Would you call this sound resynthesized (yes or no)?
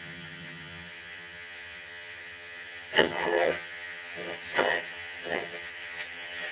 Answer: yes